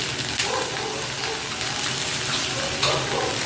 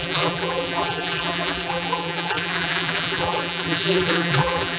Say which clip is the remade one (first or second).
second